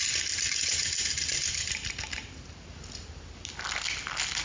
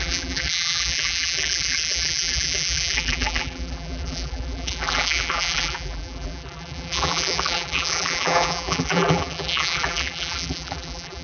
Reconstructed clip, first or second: second